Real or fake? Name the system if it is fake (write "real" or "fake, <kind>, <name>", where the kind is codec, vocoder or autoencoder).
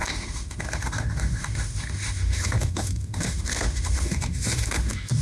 fake, autoencoder, DAC-VAE